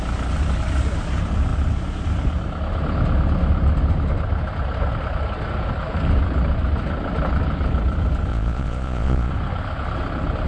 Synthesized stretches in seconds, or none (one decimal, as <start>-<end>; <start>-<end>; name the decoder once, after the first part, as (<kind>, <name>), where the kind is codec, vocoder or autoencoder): 8.3-9.3 (vocoder, Vocos)